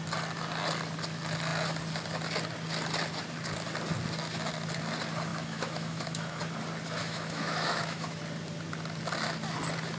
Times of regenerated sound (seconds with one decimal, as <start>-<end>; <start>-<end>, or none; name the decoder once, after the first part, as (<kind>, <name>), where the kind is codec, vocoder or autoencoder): 5.3-6.4 (autoencoder, DAC-VAE); 7.0-8.2